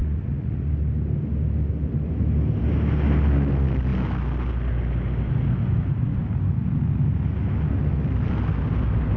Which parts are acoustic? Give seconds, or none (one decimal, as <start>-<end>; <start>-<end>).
0.7-9.2